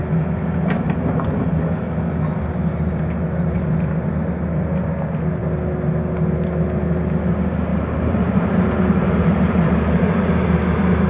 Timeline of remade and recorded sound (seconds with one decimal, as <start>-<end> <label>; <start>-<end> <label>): 0.0-7.7 recorded; 7.7-10.3 remade; 10.3-11.1 recorded

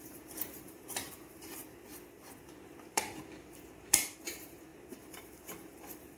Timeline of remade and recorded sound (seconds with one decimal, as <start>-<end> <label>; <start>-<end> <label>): 0.0-1.6 remade; 1.6-2.9 recorded; 2.9-6.2 remade

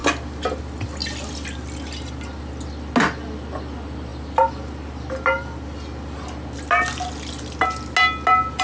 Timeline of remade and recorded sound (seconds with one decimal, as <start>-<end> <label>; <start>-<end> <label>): 0.0-8.6 recorded

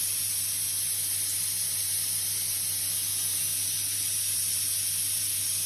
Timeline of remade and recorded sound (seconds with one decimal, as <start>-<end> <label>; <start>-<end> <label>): 0.0-5.7 recorded

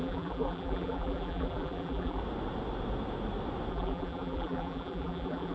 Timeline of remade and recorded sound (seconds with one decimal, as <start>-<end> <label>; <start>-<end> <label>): 0.0-2.2 remade; 2.2-3.7 recorded; 3.7-5.5 remade